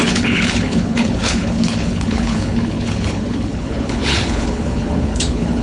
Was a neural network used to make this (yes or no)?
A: yes